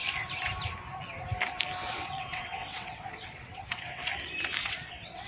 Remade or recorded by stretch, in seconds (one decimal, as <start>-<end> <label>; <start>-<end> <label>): 0.0-1.9 recorded; 1.9-4.1 remade; 4.1-4.6 recorded; 4.6-5.3 remade